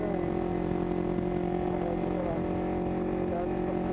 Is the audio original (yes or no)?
yes